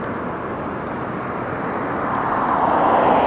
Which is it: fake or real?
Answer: real